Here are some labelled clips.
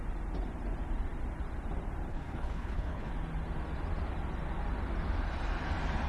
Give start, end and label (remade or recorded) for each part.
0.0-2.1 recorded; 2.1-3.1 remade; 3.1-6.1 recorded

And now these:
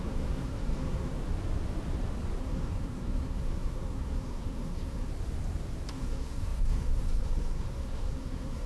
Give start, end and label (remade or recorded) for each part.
0.0-1.2 remade; 1.2-2.4 recorded; 2.4-5.1 remade; 5.1-5.9 recorded; 5.9-8.7 remade